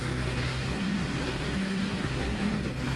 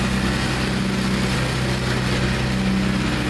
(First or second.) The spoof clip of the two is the first